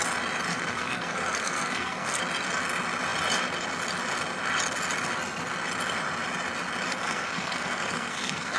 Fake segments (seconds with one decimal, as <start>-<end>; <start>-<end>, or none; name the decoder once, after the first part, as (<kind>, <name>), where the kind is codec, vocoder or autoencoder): 0.5-2.2 (codec, SNAC); 6.9-8.6